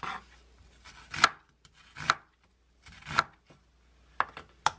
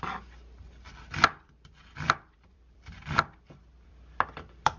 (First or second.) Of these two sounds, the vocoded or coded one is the second